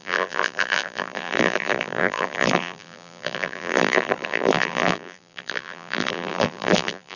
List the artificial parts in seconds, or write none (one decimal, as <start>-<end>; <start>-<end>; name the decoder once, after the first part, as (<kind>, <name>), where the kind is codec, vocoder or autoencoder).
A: 0.0-7.2 (vocoder, BigVGAN v2)